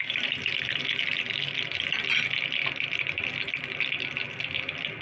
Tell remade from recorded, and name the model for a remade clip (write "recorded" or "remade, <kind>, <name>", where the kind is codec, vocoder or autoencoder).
recorded